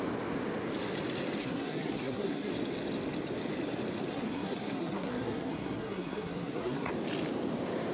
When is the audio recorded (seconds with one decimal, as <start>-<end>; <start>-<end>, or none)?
0.0-1.4; 2.5-4.1; 6.9-7.9